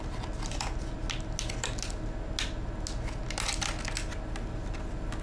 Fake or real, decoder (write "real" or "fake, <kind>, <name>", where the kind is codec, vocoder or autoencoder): real